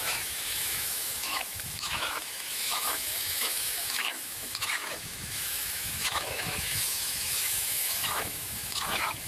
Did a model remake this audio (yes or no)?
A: yes